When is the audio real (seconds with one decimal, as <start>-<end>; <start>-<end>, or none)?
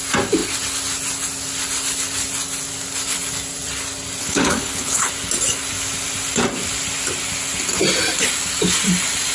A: 0.0-4.2; 5.1-9.3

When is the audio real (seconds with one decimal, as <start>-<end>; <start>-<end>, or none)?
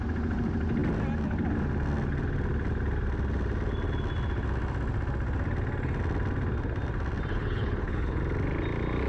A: 0.0-7.3; 8.2-9.1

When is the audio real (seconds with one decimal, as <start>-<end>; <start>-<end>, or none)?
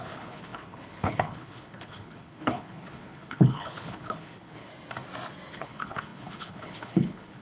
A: 4.7-5.5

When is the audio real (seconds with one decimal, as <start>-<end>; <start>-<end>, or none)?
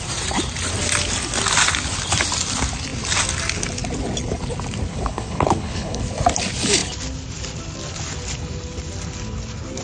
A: 0.0-4.9; 6.0-9.8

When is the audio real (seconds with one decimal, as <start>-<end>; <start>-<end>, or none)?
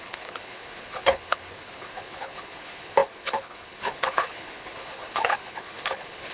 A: none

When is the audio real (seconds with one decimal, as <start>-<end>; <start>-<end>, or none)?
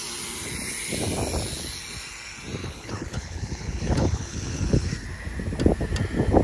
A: 0.0-2.6; 4.9-6.4